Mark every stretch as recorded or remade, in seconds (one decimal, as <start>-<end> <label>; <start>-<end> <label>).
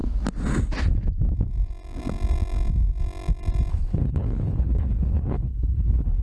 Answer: 0.0-3.7 recorded; 3.7-6.2 remade